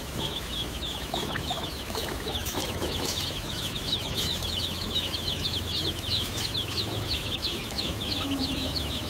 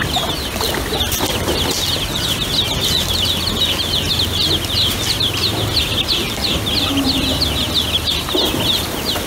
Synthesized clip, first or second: first